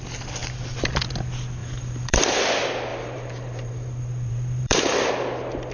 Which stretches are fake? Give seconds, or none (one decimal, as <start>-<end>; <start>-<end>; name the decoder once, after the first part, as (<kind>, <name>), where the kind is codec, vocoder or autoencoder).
1.6-2.4 (vocoder, BigVGAN v2); 2.9-5.1